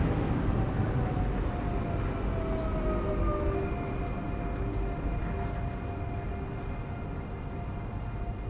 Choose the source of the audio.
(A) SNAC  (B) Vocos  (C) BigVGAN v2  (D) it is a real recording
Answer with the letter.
D